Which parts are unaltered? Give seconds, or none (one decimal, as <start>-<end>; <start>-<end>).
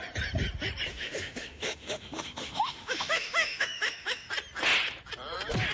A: 0.0-0.9; 4.3-5.7